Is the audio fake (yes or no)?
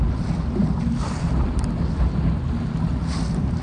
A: no